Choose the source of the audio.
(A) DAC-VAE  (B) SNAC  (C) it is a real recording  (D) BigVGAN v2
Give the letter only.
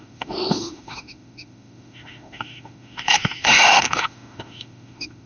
A